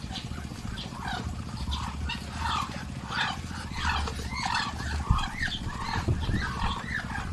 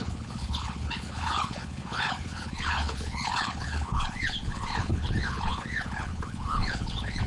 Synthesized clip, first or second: second